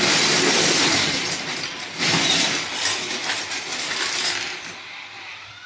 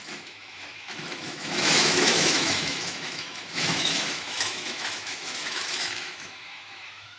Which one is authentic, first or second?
first